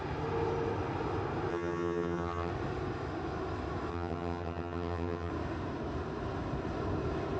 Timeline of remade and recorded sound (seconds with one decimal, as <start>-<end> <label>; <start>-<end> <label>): 0.0-1.5 recorded; 1.5-2.5 remade; 2.5-3.9 recorded; 3.9-5.3 remade; 5.3-7.4 recorded